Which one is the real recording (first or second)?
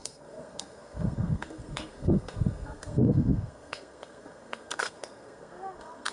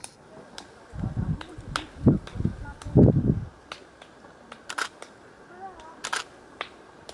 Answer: second